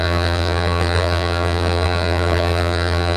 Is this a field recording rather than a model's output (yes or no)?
no